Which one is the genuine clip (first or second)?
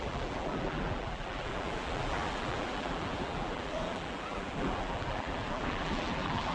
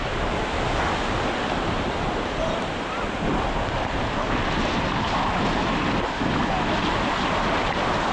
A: second